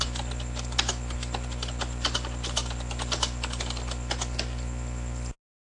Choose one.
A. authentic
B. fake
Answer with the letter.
A